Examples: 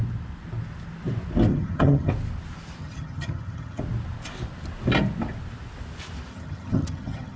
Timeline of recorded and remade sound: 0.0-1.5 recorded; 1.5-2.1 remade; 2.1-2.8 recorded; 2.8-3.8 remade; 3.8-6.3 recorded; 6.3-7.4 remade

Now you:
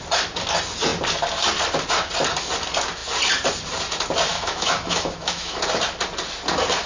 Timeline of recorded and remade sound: 0.0-4.3 recorded; 4.3-5.6 remade; 5.6-6.9 recorded

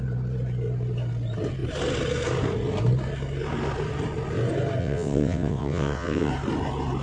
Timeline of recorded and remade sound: 0.0-4.8 recorded; 4.8-6.3 remade; 6.3-7.0 recorded

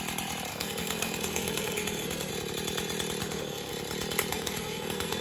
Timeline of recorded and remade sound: 0.0-0.5 recorded; 0.5-2.3 remade; 2.3-3.2 recorded; 3.2-3.7 remade; 3.7-4.3 recorded; 4.3-5.2 remade

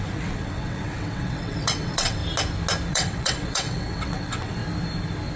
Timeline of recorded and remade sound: 0.0-2.2 remade; 2.2-2.9 recorded; 2.9-4.6 remade; 4.6-5.4 recorded

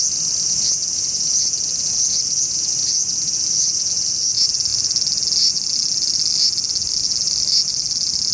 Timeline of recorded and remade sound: 0.0-8.3 recorded